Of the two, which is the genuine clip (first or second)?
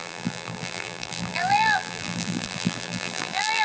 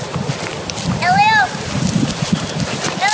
second